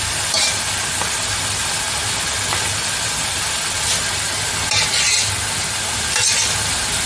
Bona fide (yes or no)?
yes